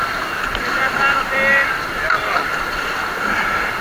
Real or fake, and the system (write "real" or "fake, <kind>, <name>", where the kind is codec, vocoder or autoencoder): real